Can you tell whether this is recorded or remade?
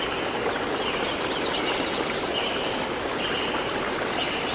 recorded